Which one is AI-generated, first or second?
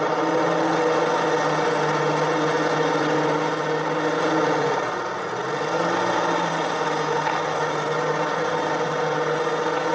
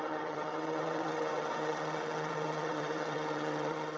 second